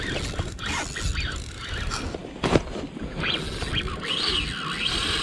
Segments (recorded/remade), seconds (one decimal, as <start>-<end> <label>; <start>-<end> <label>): 0.0-2.2 recorded; 2.2-2.8 remade; 2.8-5.2 recorded